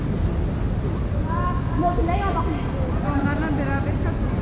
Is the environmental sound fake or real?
real